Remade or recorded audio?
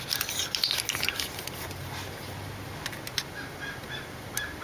recorded